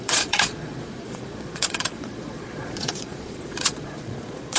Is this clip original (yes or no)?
no